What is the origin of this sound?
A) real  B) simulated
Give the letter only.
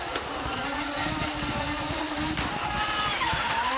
A